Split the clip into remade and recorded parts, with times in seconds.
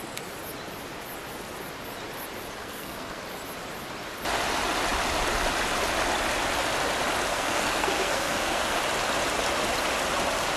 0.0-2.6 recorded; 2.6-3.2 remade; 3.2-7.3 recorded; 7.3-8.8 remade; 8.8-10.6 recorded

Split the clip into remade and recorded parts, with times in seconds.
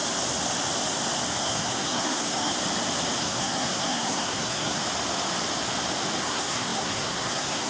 0.0-1.4 recorded; 1.4-2.5 remade; 2.5-3.2 recorded; 3.2-4.8 remade; 4.8-6.2 recorded; 6.2-7.7 remade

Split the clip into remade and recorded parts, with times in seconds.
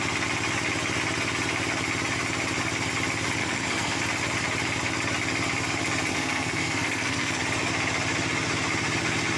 0.0-3.4 recorded; 3.4-4.0 remade; 4.0-6.1 recorded; 6.1-7.4 remade; 7.4-9.4 recorded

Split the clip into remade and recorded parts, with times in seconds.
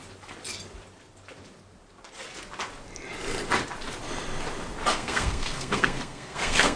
0.0-4.9 recorded; 4.9-6.8 remade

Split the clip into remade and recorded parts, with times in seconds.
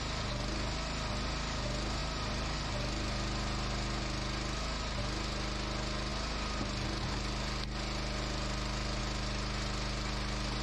0.0-10.6 recorded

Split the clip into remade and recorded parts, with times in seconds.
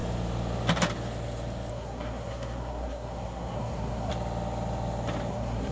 0.0-1.7 recorded; 1.7-4.1 remade; 4.1-5.3 recorded; 5.3-5.7 remade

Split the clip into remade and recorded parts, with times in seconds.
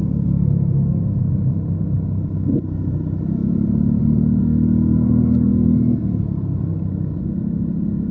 0.0-1.3 remade; 1.3-4.4 recorded; 4.4-6.6 remade; 6.6-8.1 recorded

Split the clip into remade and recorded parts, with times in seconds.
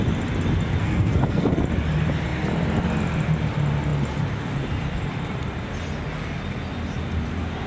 0.0-0.8 recorded; 0.8-1.6 remade; 1.6-7.7 recorded